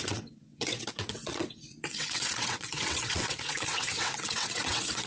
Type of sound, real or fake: fake